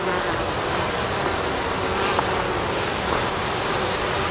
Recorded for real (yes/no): yes